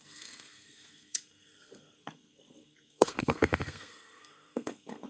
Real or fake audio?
fake